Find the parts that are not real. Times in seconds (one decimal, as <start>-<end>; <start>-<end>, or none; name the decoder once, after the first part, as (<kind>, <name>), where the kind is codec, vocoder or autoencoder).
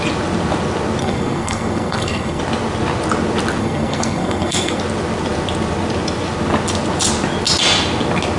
1.0-2.4 (codec, SNAC); 3.6-4.8